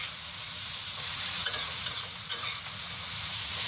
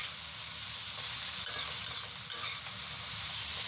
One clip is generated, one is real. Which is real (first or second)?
second